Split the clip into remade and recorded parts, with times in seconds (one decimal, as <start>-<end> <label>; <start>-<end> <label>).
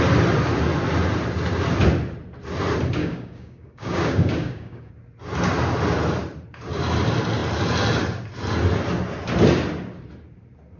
0.0-3.0 recorded; 3.0-4.9 remade; 4.9-10.8 recorded